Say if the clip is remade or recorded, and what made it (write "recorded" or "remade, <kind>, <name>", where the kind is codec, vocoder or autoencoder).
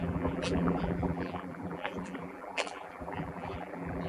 remade, vocoder, BigVGAN v2